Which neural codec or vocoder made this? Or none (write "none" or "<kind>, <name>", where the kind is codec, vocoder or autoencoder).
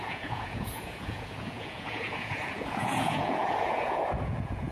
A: vocoder, Vocos